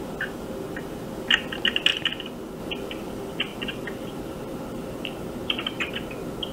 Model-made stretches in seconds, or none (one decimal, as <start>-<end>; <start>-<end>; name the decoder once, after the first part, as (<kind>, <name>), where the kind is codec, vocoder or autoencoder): 3.5-5.9 (vocoder, BigVGAN v2)